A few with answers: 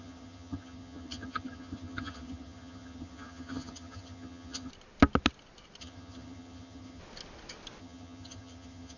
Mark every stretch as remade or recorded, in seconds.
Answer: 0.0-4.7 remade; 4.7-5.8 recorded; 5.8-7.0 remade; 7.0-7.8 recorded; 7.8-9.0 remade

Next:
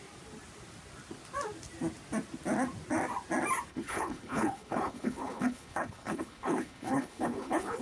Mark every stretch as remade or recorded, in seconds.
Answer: 0.0-3.7 recorded; 3.7-7.8 remade